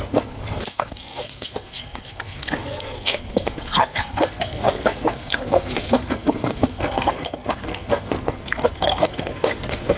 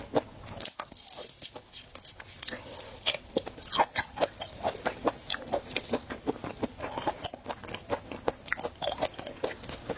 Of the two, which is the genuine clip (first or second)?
second